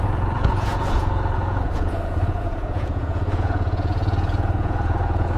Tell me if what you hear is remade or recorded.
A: remade